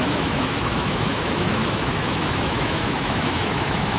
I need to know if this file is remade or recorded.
remade